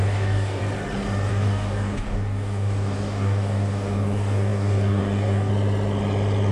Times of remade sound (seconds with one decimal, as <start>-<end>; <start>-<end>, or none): 0.0-0.6; 1.3-5.5